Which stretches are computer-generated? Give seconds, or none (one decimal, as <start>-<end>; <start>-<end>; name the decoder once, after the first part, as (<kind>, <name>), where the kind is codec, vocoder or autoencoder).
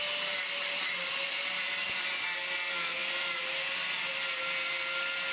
none